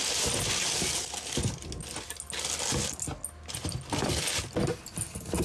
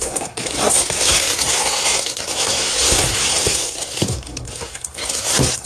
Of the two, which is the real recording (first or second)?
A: first